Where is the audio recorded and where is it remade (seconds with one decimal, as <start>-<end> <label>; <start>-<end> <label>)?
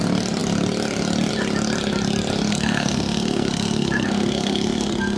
0.0-2.5 recorded; 2.5-5.2 remade